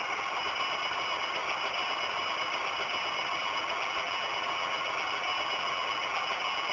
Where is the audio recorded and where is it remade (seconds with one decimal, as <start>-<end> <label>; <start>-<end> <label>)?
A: 0.0-3.4 recorded; 3.4-6.7 remade